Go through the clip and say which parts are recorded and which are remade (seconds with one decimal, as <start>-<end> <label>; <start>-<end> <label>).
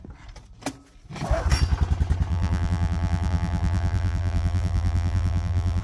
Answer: 0.0-2.3 recorded; 2.3-5.8 remade